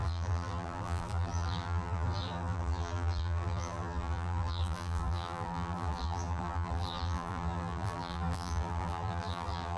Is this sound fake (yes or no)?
yes